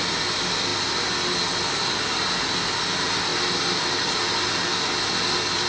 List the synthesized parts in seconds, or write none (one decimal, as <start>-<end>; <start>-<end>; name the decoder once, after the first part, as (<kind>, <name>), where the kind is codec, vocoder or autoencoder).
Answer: none